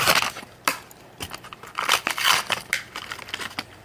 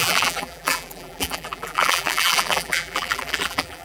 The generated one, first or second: second